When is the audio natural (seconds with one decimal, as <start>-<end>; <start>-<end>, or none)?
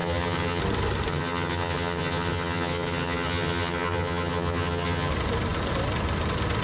0.6-1.1; 5.1-6.6